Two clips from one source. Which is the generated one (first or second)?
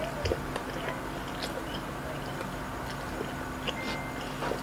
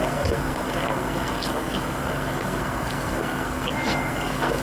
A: second